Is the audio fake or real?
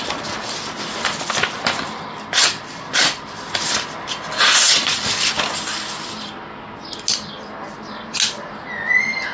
real